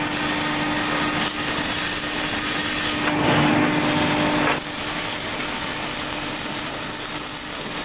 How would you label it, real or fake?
real